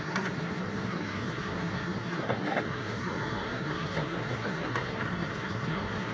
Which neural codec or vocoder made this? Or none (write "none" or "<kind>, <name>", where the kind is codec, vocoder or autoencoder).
codec, SNAC